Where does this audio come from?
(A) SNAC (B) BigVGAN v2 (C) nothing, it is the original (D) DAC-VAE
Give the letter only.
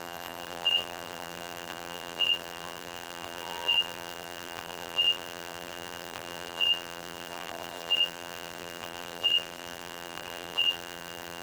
B